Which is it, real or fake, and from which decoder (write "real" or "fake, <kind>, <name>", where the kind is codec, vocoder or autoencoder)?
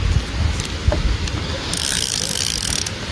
real